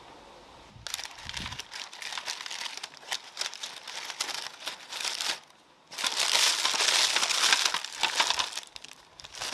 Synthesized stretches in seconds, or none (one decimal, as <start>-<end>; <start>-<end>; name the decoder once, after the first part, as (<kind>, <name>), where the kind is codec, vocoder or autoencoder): none